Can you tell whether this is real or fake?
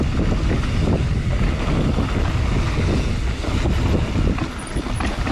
real